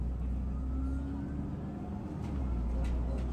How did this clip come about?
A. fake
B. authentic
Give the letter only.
B